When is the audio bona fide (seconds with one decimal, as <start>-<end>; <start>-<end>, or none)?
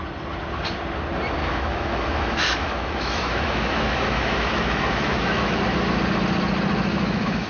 0.0-1.4; 5.6-6.9